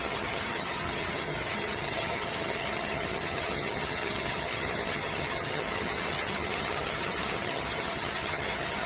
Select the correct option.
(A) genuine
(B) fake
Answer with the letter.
B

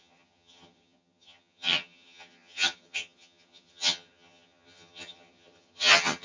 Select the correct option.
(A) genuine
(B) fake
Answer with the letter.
B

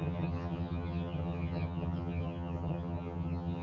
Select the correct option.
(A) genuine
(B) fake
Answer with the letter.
B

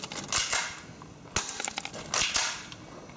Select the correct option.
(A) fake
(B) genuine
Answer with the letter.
B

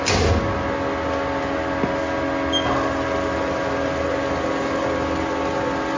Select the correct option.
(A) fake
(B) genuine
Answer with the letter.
B